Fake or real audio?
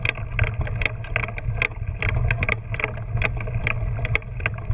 real